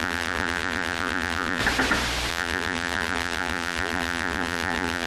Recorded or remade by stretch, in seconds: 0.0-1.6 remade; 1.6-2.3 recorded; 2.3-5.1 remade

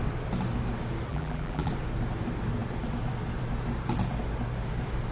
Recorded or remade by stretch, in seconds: 0.0-1.1 recorded; 1.1-1.7 remade; 1.7-5.1 recorded

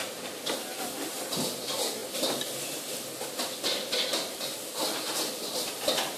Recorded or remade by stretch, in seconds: 0.0-6.2 recorded

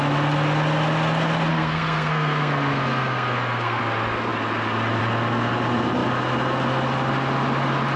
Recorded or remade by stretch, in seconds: 0.0-1.5 recorded; 1.5-3.8 remade; 3.8-8.0 recorded

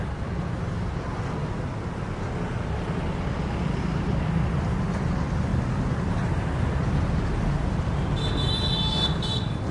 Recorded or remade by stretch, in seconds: 0.0-5.5 recorded; 5.5-6.5 remade; 6.5-9.7 recorded

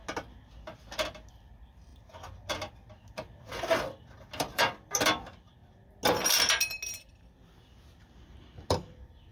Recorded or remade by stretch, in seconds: 0.0-1.3 recorded; 1.3-1.9 remade; 1.9-3.1 recorded; 3.1-5.6 remade; 5.6-8.7 recorded; 8.7-9.3 remade

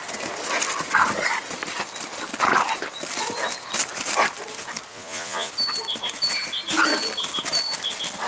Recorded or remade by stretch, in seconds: 0.0-4.9 recorded; 4.9-5.5 remade; 5.5-8.3 recorded